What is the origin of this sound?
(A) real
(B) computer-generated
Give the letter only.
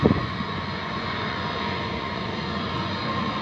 B